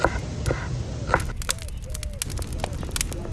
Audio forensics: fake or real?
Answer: real